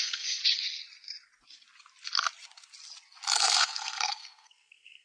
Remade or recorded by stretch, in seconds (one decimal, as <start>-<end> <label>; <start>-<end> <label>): 0.0-0.4 remade; 0.4-3.4 recorded; 3.4-5.0 remade